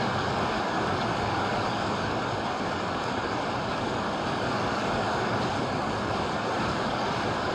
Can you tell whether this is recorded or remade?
remade